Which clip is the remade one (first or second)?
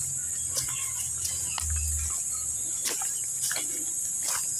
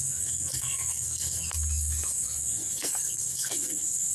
second